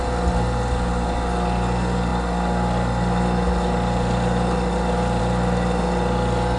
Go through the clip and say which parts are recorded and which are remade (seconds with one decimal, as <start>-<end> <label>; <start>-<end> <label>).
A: 0.0-6.6 recorded